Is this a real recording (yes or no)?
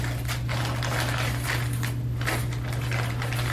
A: yes